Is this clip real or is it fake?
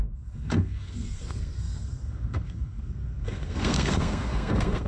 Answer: fake